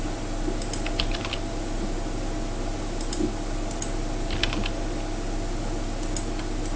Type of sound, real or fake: real